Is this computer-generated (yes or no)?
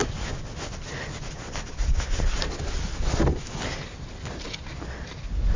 no